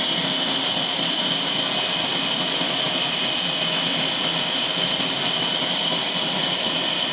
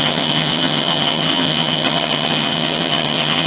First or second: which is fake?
second